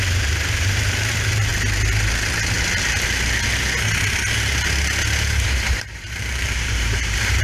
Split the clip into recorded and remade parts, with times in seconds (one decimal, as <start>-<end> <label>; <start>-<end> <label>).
0.0-1.5 remade; 1.5-5.6 recorded; 5.6-7.4 remade